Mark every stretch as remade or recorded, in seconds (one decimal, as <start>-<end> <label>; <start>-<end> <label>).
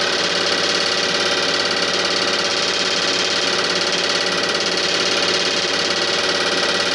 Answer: 0.0-6.9 recorded